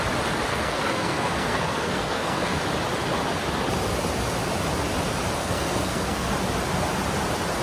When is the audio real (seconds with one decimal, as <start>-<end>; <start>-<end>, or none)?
0.0-0.5; 2.6-5.4; 6.3-7.6